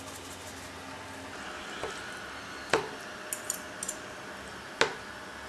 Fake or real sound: real